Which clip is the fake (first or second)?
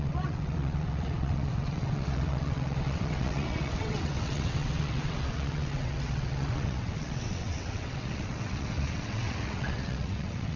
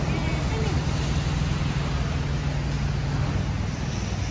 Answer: first